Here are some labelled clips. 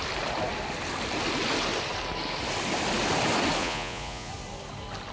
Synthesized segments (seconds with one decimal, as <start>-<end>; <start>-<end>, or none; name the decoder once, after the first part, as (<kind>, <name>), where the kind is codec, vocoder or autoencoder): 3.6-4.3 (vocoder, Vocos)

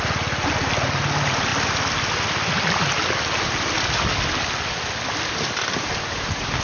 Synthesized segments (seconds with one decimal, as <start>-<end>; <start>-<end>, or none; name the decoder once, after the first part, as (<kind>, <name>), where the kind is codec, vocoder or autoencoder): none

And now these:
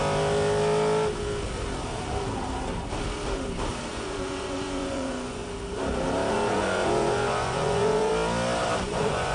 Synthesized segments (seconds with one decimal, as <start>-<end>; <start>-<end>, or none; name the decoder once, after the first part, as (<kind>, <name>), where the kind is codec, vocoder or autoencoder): 3.9-5.4 (vocoder, Vocos); 6.3-8.1; 8.8-9.3

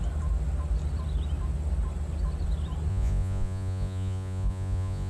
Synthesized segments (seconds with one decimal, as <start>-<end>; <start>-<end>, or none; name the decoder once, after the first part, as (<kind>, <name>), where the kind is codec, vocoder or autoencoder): 2.9-5.1 (vocoder, Vocos)

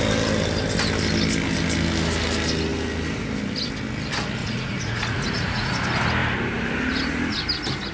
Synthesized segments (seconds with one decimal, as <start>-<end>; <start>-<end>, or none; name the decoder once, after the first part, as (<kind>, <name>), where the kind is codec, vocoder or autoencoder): 4.4-5.7 (vocoder, Vocos)

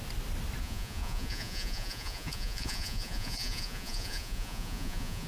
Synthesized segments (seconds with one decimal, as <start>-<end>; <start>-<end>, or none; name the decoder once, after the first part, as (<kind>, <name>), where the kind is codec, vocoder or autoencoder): 0.6-5.3 (vocoder, Vocos)

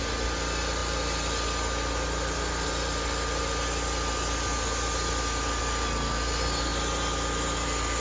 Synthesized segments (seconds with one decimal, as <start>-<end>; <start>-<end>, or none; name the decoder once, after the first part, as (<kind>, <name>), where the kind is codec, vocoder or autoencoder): none

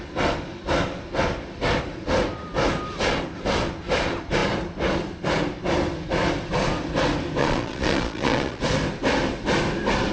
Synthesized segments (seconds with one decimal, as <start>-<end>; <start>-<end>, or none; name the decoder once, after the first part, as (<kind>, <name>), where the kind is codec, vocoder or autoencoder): 7.4-8.6 (vocoder, Vocos)